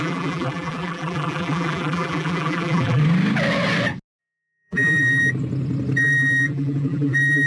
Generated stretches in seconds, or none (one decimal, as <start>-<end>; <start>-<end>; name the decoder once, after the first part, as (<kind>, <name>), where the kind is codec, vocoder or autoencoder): 0.0-3.0 (vocoder, BigVGAN v2); 4.2-5.2; 6.0-7.5